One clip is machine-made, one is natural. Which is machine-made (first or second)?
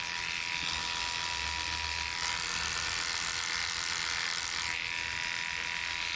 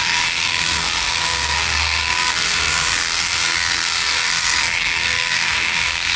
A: second